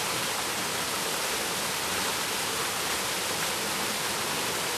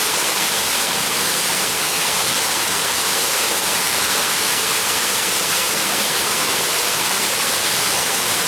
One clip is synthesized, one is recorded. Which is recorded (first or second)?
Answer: first